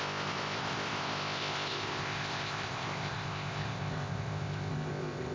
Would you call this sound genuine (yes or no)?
no